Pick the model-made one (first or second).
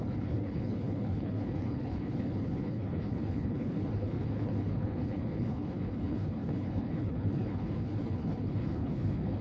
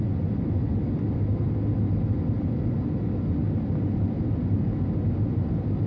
first